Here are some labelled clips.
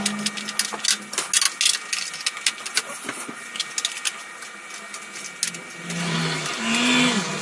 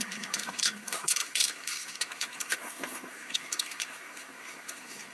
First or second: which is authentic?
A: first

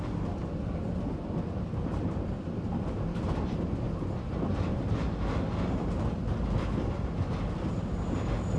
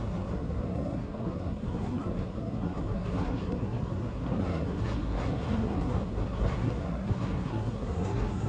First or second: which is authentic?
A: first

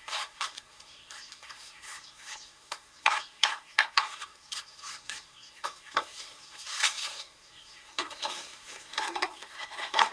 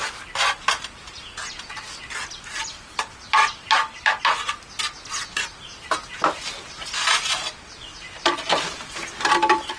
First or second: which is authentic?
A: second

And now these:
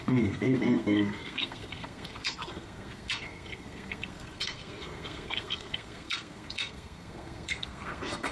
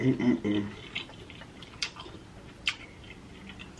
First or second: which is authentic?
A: second